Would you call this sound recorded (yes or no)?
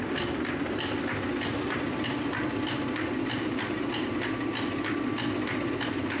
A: yes